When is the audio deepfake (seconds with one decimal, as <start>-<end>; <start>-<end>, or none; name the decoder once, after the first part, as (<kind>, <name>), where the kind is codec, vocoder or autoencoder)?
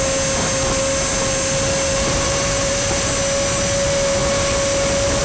2.1-3.1 (vocoder, BigVGAN v2)